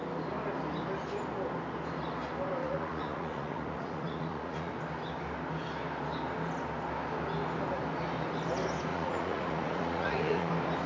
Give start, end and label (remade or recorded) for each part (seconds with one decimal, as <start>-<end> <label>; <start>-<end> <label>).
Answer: 0.0-2.6 recorded; 2.6-4.7 remade; 4.7-8.9 recorded; 8.9-10.5 remade; 10.5-10.9 recorded